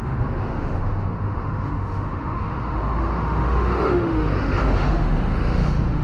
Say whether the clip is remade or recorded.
remade